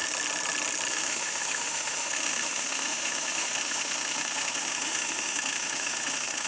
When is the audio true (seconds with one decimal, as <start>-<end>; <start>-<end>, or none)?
0.0-0.9